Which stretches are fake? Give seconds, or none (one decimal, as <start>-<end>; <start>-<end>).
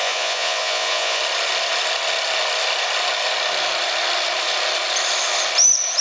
0.0-1.2